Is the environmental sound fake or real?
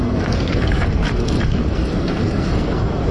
fake